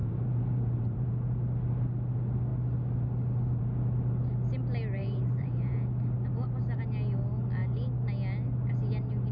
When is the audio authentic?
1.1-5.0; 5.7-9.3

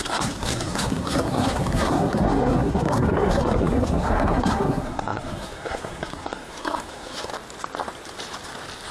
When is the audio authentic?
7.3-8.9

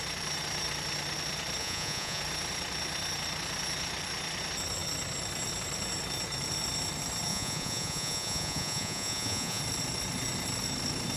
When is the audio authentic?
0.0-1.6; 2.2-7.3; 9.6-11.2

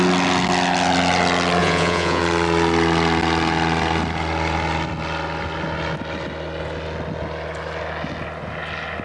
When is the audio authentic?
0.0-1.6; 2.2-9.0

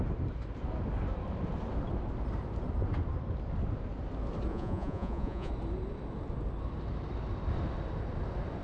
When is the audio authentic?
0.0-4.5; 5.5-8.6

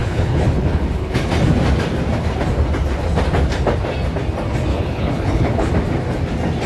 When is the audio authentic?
1.3-4.7; 5.7-6.7

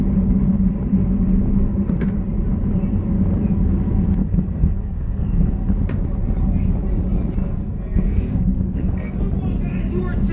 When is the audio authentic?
0.0-4.2; 5.5-7.4; 9.2-10.3

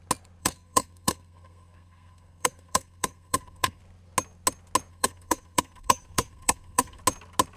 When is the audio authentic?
0.0-0.4; 3.8-4.9; 7.0-7.6